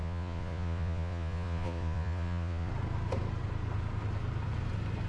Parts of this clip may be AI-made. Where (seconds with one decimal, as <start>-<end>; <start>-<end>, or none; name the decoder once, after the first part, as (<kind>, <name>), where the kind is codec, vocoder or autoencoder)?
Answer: 0.0-2.7 (vocoder, Vocos)